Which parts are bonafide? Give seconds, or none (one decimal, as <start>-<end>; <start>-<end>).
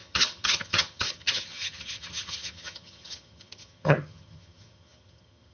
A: none